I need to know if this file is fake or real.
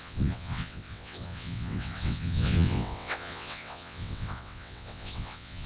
fake